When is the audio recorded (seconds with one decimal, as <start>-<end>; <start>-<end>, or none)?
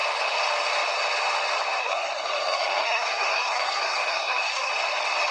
0.0-1.8; 4.7-5.3